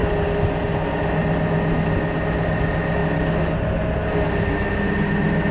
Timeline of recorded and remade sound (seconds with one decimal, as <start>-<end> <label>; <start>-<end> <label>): 0.0-5.5 recorded